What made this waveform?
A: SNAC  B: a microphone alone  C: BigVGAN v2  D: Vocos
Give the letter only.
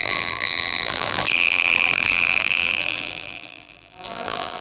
C